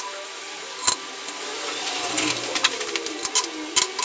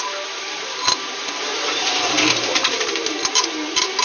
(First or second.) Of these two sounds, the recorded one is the first